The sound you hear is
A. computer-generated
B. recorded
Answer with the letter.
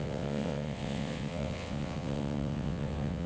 A